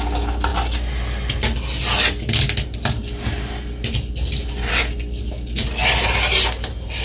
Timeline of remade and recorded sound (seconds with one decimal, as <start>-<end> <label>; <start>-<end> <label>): 0.0-7.0 recorded